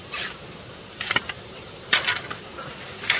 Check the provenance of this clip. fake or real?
real